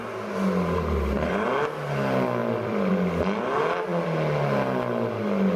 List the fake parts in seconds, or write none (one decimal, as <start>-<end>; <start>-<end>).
2.4-2.9